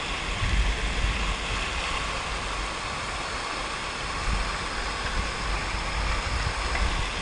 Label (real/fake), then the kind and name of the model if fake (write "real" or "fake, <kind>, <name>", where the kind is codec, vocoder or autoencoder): real